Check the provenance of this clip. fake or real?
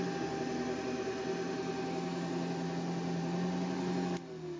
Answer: real